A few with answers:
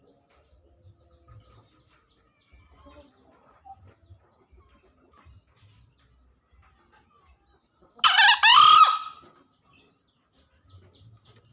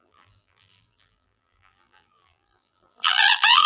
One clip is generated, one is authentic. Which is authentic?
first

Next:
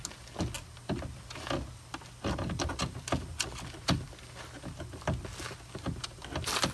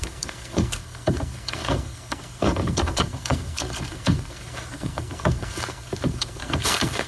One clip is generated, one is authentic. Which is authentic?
first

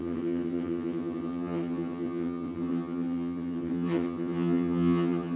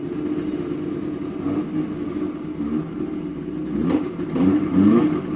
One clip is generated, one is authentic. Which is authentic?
second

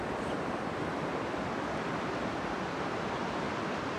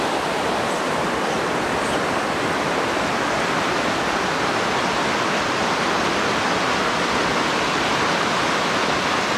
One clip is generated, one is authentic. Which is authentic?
second